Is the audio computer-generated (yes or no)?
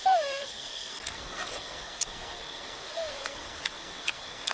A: yes